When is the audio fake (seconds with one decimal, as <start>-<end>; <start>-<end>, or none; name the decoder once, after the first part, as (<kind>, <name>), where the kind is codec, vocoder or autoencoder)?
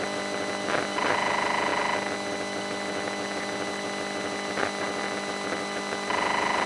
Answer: none